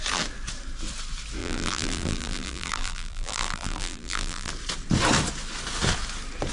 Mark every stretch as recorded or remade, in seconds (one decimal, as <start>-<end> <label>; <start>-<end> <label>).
0.0-1.4 recorded; 1.4-4.5 remade; 4.5-6.5 recorded